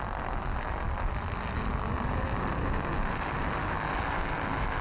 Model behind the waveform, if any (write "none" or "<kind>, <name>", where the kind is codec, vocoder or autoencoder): none